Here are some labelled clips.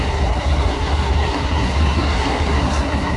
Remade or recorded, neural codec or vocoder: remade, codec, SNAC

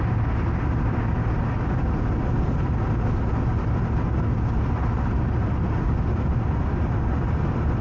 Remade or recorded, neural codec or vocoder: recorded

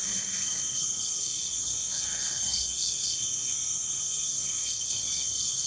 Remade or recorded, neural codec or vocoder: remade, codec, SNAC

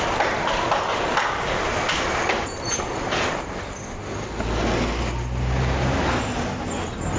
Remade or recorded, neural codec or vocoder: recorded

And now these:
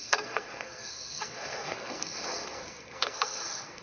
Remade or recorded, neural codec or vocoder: remade, codec, SNAC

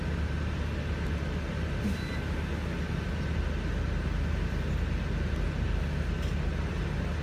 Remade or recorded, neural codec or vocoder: recorded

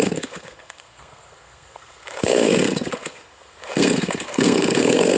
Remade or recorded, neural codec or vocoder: remade, codec, SNAC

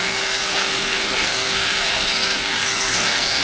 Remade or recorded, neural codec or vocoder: remade, codec, SNAC